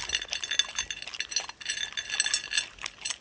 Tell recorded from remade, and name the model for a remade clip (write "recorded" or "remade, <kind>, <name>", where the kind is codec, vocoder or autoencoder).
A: recorded